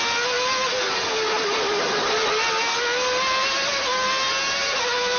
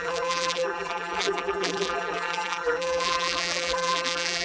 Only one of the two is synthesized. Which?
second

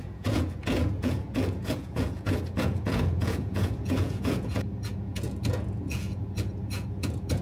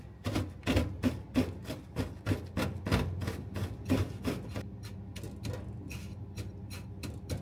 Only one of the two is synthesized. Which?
first